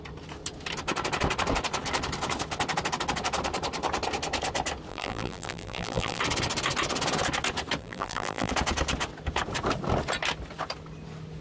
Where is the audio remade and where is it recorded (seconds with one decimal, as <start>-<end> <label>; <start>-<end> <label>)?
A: 0.0-4.9 recorded; 4.9-6.2 remade; 6.2-7.8 recorded; 7.8-8.5 remade; 8.5-11.4 recorded